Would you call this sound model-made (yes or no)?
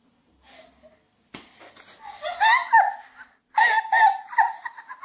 no